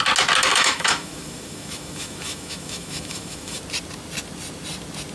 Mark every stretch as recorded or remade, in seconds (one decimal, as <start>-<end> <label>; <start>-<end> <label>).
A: 0.0-0.5 recorded; 0.5-3.6 remade; 3.6-5.1 recorded

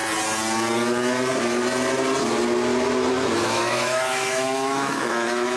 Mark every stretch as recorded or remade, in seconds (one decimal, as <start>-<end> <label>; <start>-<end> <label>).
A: 0.0-3.4 recorded; 3.4-5.6 remade

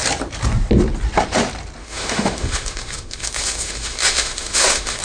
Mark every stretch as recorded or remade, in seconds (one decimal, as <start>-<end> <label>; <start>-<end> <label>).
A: 0.0-1.8 recorded; 1.8-5.0 remade

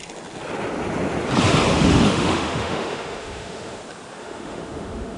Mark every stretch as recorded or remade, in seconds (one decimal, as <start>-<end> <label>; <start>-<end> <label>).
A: 0.0-1.7 recorded; 1.7-3.8 remade; 3.8-4.2 recorded; 4.2-5.2 remade

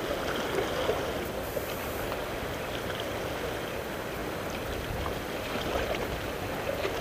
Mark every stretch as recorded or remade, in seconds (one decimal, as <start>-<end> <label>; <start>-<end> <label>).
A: 0.0-7.0 recorded

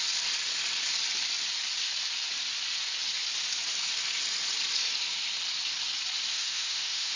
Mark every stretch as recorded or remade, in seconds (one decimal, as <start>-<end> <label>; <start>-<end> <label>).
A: 0.0-6.3 recorded; 6.3-7.2 remade

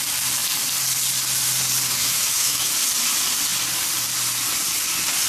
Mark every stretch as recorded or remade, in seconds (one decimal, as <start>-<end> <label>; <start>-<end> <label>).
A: 0.0-2.0 recorded; 2.0-2.7 remade; 2.7-5.3 recorded

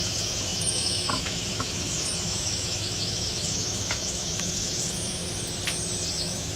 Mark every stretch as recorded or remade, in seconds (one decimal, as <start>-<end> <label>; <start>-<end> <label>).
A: 0.0-5.2 remade; 5.2-6.1 recorded; 6.1-6.6 remade